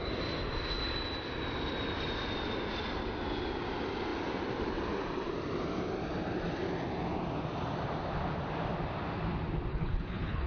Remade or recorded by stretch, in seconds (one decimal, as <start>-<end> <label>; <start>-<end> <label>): 0.0-9.7 recorded; 9.7-10.5 remade